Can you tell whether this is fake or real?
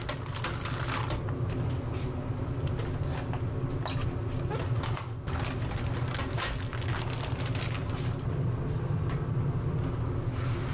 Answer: real